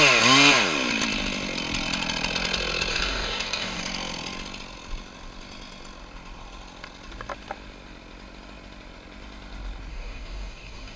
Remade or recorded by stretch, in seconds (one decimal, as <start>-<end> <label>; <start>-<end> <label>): 0.0-2.9 recorded; 2.9-3.8 remade; 3.8-9.9 recorded; 9.9-11.0 remade